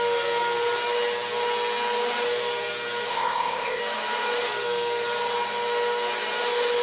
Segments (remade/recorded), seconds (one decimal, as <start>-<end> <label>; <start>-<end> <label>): 0.0-3.1 recorded; 3.1-3.8 remade; 3.8-6.8 recorded